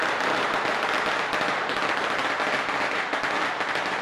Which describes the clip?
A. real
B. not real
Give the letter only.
A